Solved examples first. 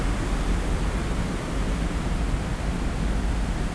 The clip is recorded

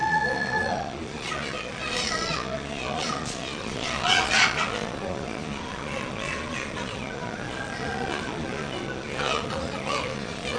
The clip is remade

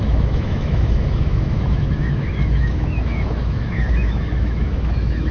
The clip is remade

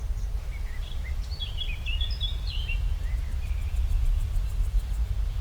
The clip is recorded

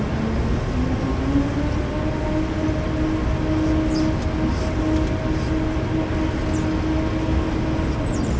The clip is recorded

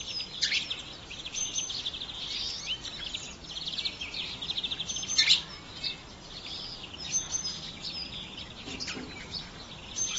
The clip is recorded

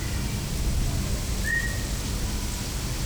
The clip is recorded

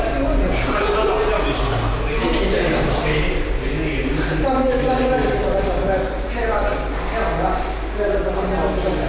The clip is recorded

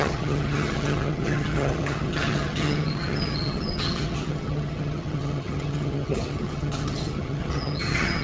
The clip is remade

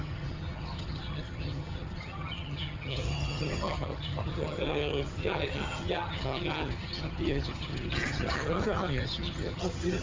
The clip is remade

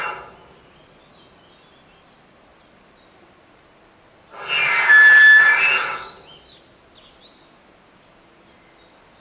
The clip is recorded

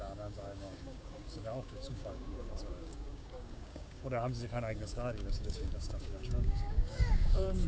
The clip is remade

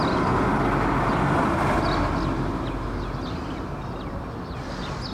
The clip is recorded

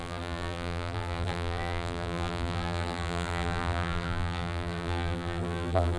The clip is remade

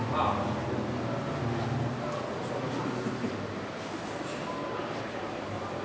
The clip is remade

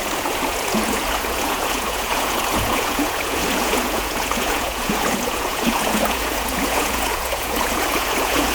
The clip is remade